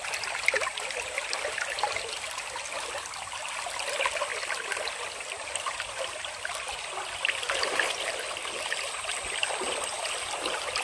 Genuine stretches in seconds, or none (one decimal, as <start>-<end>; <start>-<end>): 0.0-10.8